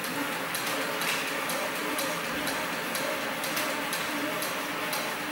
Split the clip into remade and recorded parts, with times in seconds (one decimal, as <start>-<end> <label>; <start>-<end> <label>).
0.0-1.8 recorded; 1.8-2.5 remade; 2.5-5.3 recorded